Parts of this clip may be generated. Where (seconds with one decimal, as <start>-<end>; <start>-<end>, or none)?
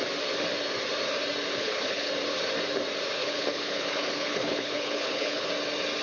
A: 1.5-2.1; 3.2-5.5